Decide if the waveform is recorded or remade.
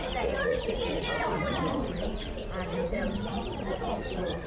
remade